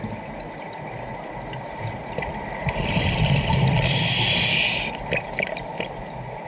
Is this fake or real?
real